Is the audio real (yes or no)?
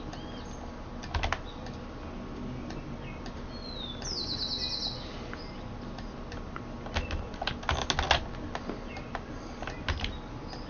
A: yes